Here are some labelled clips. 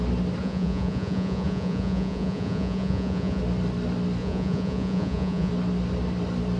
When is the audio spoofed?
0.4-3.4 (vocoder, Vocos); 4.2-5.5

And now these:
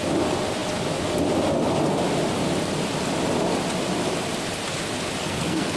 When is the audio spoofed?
5.2-5.8 (codec, SNAC)

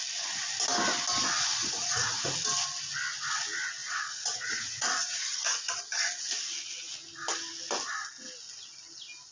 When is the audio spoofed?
1.6-2.3 (vocoder, Vocos); 3.8-5.8

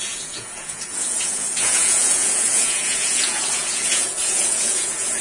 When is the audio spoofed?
0.0-5.2 (vocoder, Vocos)

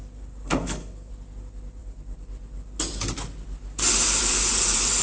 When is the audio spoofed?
0.5-1.1 (codec, SNAC)

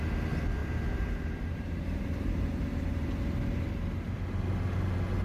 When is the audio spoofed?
0.6-3.7 (vocoder, BigVGAN v2)